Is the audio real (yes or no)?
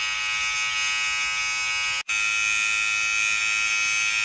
yes